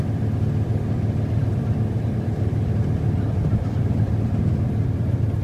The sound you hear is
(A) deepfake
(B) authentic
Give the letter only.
A